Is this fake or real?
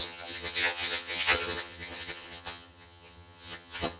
fake